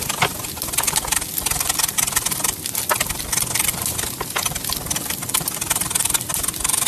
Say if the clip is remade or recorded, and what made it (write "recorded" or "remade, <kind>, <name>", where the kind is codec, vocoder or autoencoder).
recorded